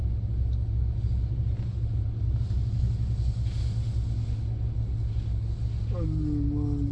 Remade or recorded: recorded